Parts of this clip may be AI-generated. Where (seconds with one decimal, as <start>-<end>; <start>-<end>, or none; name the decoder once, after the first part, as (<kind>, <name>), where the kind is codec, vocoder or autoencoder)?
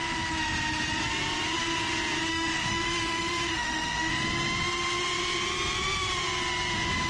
2.3-4.1 (autoencoder, DAC-VAE)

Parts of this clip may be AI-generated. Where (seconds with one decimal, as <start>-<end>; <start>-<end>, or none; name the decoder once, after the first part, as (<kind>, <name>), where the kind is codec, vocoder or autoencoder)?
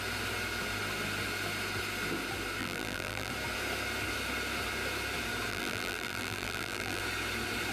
2.6-3.3 (vocoder, BigVGAN v2); 5.5-7.0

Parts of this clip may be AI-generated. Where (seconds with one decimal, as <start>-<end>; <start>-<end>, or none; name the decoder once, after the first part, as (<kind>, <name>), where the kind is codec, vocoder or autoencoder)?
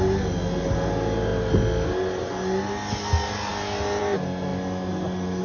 none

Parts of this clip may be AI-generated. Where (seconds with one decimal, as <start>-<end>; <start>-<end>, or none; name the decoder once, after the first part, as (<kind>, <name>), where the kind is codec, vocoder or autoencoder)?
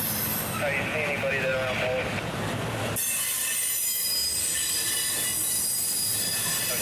none